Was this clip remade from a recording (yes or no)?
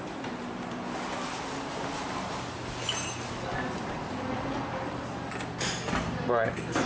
no